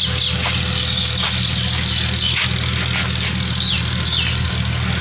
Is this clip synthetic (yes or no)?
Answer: no